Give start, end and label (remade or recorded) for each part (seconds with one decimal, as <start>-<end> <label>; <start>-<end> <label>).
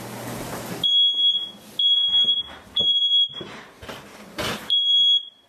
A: 0.0-2.0 recorded; 2.0-5.5 remade